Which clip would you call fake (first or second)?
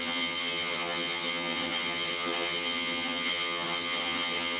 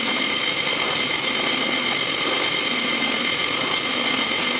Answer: first